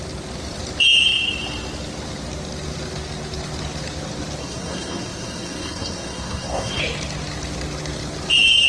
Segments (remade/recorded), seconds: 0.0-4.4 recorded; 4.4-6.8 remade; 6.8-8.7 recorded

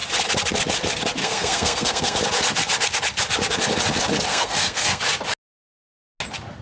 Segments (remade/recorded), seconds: 0.0-1.2 recorded; 1.2-2.2 remade; 2.2-4.3 recorded; 4.3-5.0 remade; 5.0-6.6 recorded

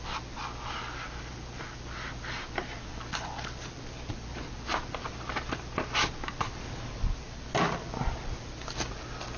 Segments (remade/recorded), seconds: 0.0-9.4 recorded

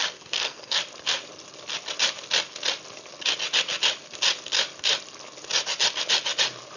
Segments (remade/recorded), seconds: 0.0-0.8 remade; 0.8-6.8 recorded

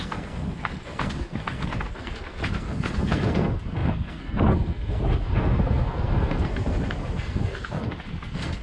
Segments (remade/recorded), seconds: 0.0-8.6 remade

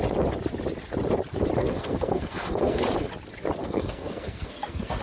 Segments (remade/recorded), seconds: 0.0-1.6 recorded; 1.6-2.8 remade; 2.8-3.6 recorded; 3.6-5.0 remade

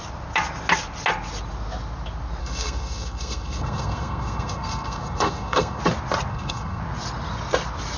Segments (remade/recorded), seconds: 0.0-2.4 recorded; 2.4-5.8 remade; 5.8-6.3 recorded; 6.3-6.8 remade; 6.8-8.0 recorded